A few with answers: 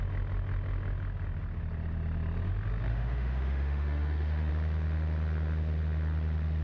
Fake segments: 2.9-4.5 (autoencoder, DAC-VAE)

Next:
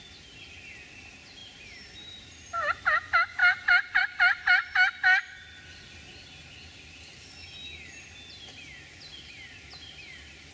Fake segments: 1.4-2.8 (vocoder, BigVGAN v2); 3.4-4.0; 9.1-10.5